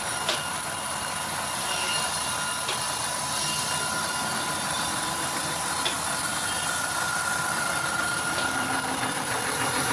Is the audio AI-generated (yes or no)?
yes